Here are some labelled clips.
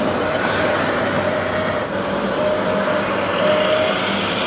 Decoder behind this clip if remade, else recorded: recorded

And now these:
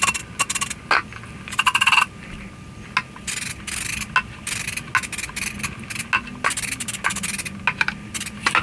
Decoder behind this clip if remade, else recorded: recorded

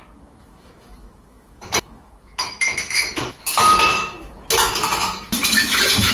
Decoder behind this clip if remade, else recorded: remade, autoencoder, DAC-VAE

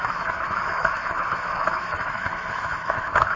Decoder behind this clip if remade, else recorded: remade, autoencoder, DAC-VAE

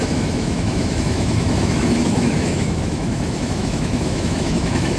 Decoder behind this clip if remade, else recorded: remade, autoencoder, DAC-VAE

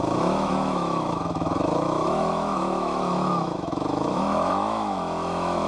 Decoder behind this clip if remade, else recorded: remade, autoencoder, DAC-VAE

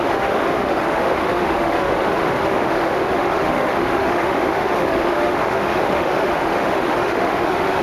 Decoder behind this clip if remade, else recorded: remade, autoencoder, DAC-VAE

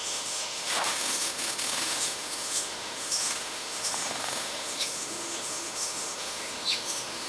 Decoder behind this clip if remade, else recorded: remade, autoencoder, DAC-VAE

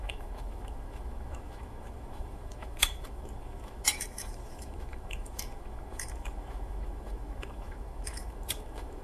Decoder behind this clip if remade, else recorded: remade, autoencoder, DAC-VAE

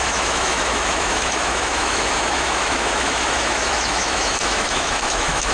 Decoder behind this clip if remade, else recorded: remade, autoencoder, DAC-VAE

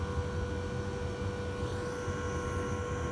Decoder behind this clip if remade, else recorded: recorded